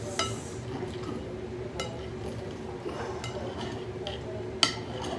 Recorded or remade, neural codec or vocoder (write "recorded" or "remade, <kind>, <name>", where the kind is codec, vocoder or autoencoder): recorded